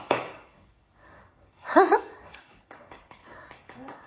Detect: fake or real fake